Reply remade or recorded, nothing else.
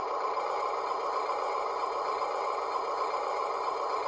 recorded